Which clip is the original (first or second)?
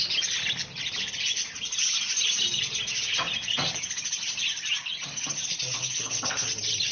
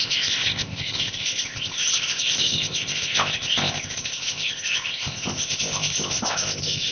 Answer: first